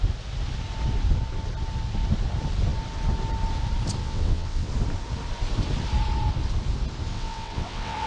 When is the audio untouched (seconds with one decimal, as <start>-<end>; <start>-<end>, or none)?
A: 0.0-4.0; 4.7-7.1